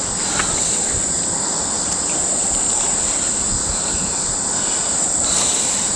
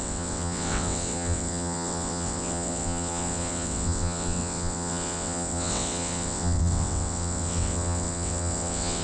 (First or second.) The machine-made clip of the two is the second